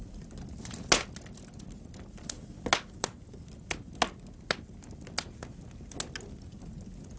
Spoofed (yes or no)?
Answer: no